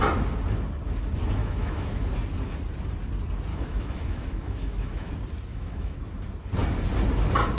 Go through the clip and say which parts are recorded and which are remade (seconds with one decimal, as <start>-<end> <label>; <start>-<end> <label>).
0.0-1.4 recorded; 1.4-2.0 remade; 2.0-3.5 recorded; 3.5-5.1 remade; 5.1-5.5 recorded; 5.5-6.0 remade; 6.0-7.6 recorded

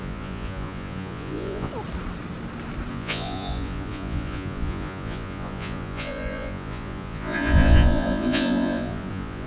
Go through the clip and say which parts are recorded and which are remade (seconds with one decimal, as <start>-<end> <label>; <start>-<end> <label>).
0.0-1.7 remade; 1.7-2.9 recorded; 2.9-9.5 remade

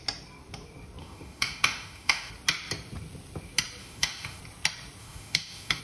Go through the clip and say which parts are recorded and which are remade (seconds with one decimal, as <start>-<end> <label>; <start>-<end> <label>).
0.0-1.0 recorded; 1.0-2.3 remade; 2.3-3.8 recorded; 3.8-4.4 remade; 4.4-5.0 recorded; 5.0-5.8 remade

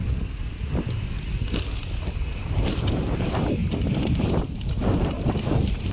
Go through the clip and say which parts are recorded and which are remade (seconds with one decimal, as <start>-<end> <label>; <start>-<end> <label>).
0.0-5.9 recorded

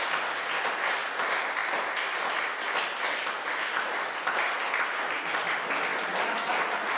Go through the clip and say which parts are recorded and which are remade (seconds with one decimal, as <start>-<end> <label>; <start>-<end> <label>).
0.0-7.0 recorded

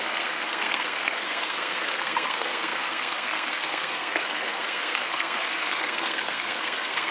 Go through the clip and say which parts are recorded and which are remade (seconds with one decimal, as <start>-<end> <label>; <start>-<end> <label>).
0.0-7.1 remade

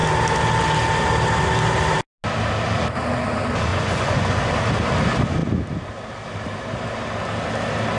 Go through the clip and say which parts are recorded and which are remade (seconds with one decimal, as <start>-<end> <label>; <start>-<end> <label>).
0.0-3.7 recorded; 3.7-4.4 remade; 4.4-8.0 recorded